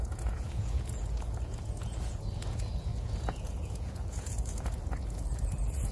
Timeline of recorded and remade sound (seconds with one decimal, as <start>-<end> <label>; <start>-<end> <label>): 0.0-5.9 remade